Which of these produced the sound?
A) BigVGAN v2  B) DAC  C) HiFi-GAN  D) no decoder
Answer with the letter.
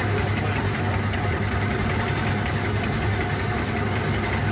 D